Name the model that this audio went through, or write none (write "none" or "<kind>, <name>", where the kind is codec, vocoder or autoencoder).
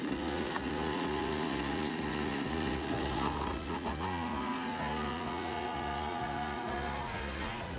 vocoder, Vocos